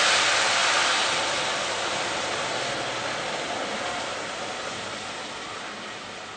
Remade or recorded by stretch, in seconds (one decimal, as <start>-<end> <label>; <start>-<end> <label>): 0.0-6.4 recorded

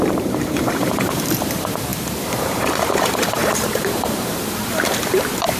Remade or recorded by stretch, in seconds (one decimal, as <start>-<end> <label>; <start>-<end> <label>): 0.0-5.6 remade